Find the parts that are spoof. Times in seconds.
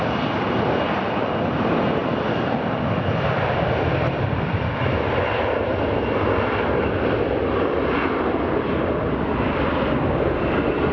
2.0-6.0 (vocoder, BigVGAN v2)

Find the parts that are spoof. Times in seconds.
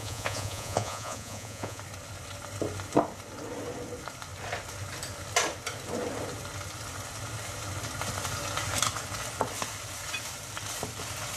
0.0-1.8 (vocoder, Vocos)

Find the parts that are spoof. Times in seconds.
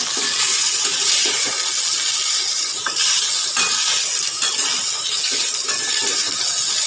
0.5-1.5 (vocoder, Vocos)